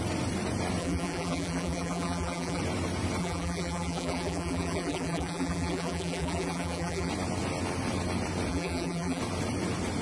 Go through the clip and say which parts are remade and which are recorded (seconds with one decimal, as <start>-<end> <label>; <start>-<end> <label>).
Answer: 0.0-0.8 recorded; 0.8-2.6 remade; 2.6-3.2 recorded; 3.2-7.1 remade; 7.1-8.5 recorded; 8.5-9.2 remade; 9.2-10.0 recorded